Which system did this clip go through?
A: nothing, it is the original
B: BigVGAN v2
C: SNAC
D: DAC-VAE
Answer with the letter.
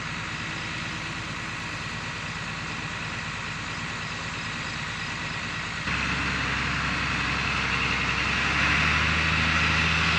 A